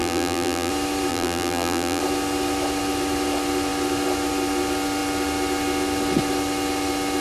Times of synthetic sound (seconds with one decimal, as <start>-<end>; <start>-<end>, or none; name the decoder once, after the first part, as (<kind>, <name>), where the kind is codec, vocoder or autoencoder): 0.0-0.7 (vocoder, BigVGAN v2); 1.1-2.0